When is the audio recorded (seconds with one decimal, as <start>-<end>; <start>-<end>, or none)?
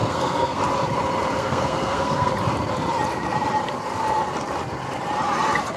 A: 0.6-1.4; 2.3-5.8